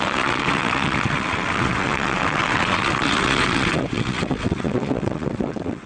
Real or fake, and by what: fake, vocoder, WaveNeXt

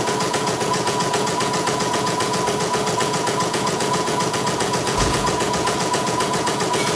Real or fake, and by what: fake, vocoder, Vocos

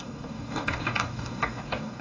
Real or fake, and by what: fake, codec, DAC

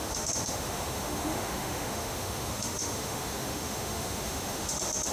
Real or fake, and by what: fake, autoencoder, DAC-VAE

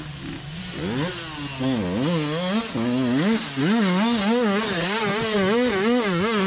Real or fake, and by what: real